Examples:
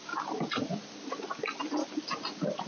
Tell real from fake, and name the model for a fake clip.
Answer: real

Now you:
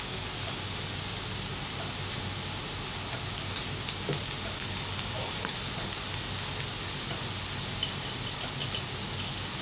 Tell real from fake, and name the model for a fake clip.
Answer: real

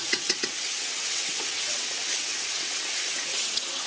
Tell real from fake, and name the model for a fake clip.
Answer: fake, vocoder, WaveNeXt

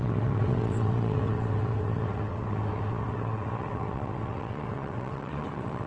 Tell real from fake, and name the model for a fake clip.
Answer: fake, vocoder, WaveNeXt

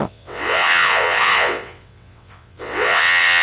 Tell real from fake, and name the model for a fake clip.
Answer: fake, vocoder, WaveNeXt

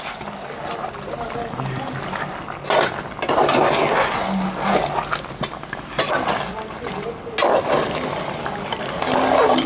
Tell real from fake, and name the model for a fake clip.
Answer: real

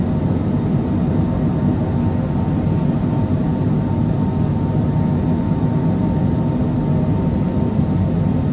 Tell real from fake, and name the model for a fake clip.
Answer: real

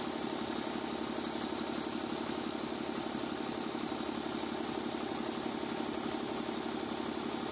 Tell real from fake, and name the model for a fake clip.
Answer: real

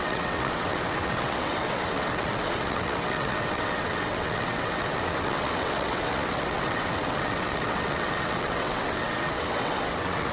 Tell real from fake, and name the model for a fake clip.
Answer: fake, vocoder, WaveNeXt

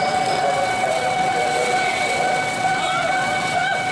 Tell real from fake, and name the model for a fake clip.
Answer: fake, vocoder, WaveNeXt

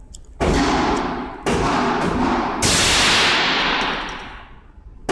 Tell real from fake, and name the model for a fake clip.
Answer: real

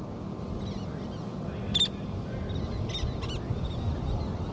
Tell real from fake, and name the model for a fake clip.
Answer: real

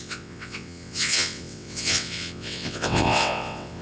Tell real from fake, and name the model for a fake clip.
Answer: fake, vocoder, WaveNeXt